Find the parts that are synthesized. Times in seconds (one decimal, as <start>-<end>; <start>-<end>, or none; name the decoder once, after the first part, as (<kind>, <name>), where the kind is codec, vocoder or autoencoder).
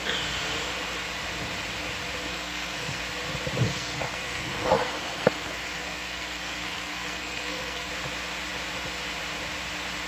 2.3-3.0 (codec, SNAC); 3.7-7.9